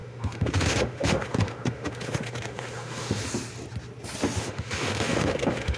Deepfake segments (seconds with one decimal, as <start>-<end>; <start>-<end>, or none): 0.0-3.2; 4.4-5.8